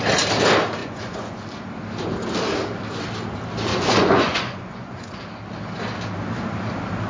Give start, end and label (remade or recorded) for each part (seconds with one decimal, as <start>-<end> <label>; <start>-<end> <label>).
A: 0.0-0.8 recorded; 0.8-1.4 remade; 1.4-3.7 recorded; 3.7-5.2 remade; 5.2-7.1 recorded